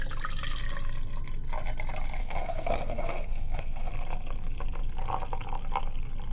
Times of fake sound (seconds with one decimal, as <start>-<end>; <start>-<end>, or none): 2.2-3.9